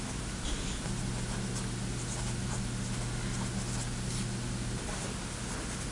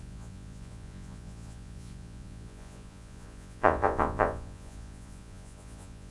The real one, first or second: first